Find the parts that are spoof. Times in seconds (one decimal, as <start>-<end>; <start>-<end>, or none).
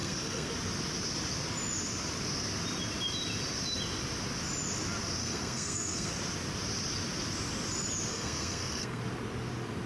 0.0-0.5; 5.2-6.1; 8.1-9.0